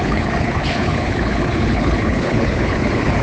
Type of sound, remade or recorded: remade